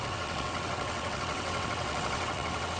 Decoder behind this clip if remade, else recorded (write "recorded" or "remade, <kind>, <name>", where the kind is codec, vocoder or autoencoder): remade, vocoder, WaveNeXt